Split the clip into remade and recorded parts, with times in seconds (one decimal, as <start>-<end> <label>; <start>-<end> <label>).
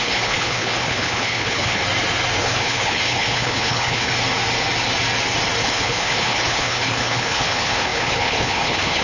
0.0-1.8 remade; 1.8-2.4 recorded; 2.4-4.1 remade; 4.1-5.6 recorded; 5.6-9.0 remade